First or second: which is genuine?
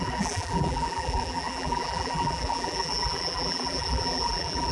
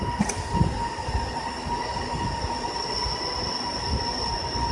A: second